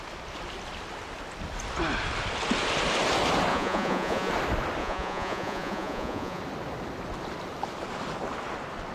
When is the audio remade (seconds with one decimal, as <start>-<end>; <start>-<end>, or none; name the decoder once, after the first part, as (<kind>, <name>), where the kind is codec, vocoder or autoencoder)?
3.5-4.3 (vocoder, Vocos); 4.8-6.4